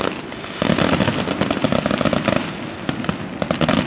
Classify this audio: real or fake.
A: real